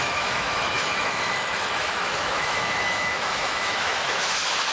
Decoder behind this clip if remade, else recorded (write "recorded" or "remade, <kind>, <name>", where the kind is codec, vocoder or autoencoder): remade, autoencoder, DAC-VAE